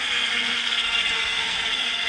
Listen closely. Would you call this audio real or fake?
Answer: fake